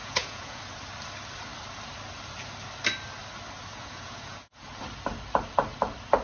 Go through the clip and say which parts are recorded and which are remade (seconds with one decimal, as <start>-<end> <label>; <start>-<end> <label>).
0.0-0.6 remade; 0.6-3.7 recorded; 3.7-4.7 remade; 4.7-6.2 recorded